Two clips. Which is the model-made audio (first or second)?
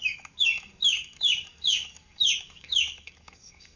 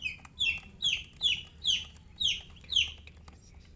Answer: first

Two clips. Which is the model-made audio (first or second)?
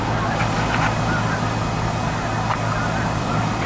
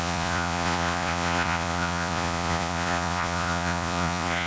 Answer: second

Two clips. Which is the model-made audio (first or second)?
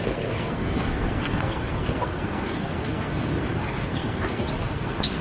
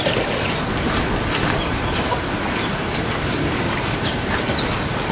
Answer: first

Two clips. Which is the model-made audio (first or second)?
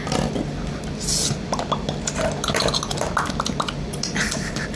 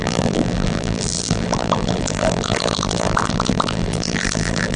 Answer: second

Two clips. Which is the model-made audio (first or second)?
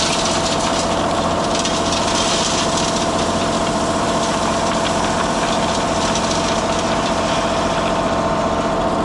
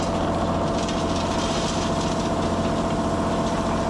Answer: first